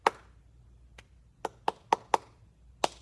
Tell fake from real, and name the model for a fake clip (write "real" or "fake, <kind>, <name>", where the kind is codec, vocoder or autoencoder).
real